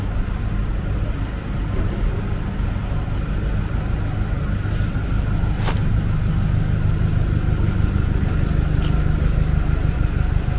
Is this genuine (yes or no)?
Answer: yes